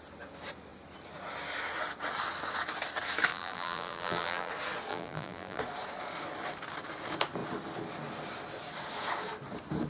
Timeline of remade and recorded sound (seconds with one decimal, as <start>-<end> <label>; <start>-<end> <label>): 0.0-3.3 recorded; 3.3-4.5 remade; 4.5-4.9 recorded; 4.9-5.6 remade; 5.6-9.9 recorded